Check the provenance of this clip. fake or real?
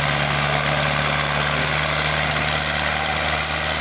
real